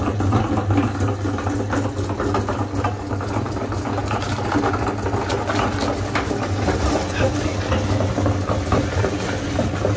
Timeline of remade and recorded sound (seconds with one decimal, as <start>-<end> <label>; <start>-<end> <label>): 0.0-10.0 recorded